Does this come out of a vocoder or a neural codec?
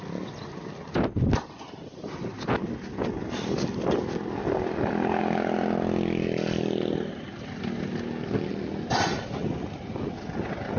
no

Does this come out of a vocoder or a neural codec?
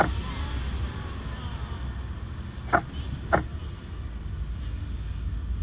no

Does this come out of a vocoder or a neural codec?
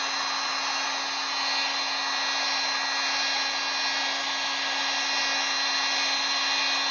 no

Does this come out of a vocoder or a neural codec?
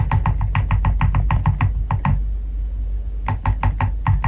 no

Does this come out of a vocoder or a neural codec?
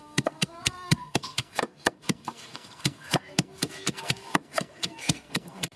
yes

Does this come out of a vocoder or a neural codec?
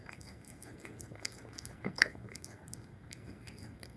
yes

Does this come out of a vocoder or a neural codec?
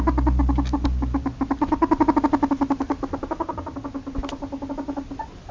no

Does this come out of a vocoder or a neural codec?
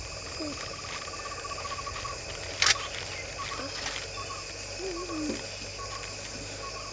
no